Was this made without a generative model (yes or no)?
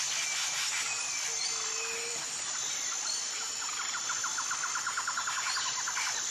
yes